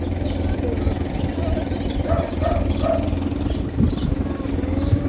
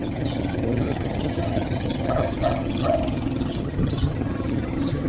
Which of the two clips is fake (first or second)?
second